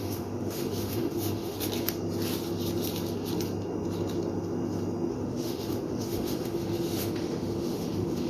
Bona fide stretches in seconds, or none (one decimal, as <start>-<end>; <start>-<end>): 1.5-5.1